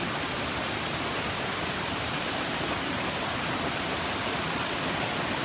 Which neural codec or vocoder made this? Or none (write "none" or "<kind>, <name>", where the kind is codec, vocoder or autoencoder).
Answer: vocoder, BigVGAN v2